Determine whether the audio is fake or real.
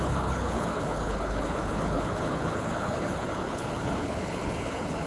fake